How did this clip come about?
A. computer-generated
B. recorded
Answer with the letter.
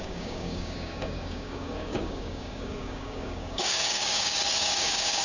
A